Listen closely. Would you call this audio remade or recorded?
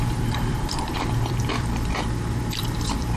remade